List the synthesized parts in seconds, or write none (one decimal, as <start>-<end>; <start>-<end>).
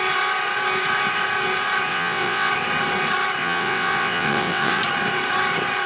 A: 1.9-2.5; 3.4-4.8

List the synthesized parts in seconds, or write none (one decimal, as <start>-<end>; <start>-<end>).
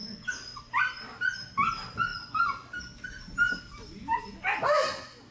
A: none